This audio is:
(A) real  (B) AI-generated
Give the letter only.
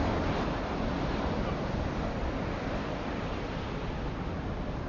A